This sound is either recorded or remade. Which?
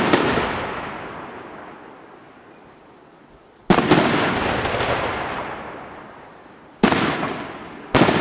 recorded